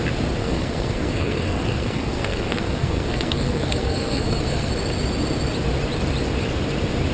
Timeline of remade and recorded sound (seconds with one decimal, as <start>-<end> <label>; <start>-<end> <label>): 0.0-0.4 recorded; 0.4-4.7 remade; 4.7-7.1 recorded